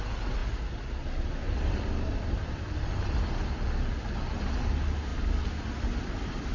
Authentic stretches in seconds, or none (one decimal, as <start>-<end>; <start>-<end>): 0.0-6.5